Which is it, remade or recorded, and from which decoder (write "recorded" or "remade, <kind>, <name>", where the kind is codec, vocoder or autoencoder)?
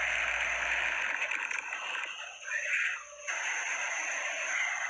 recorded